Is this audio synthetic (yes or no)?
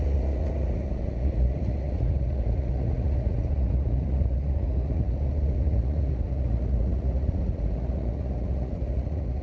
yes